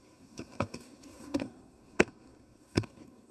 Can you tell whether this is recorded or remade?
remade